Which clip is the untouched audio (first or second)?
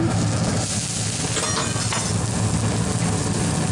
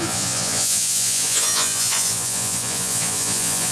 first